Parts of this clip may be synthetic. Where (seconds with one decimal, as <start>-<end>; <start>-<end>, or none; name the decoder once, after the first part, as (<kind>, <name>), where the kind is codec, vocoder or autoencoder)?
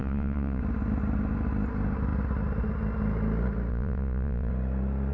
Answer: 0.0-0.6 (vocoder, Vocos); 3.7-4.5